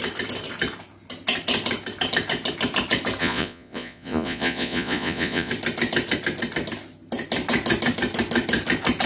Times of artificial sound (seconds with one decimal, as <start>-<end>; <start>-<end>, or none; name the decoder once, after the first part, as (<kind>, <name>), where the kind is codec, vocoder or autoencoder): 3.2-5.5 (vocoder, Vocos)